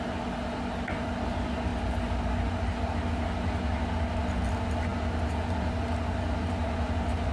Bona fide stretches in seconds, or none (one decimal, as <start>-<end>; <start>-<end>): 0.0-7.3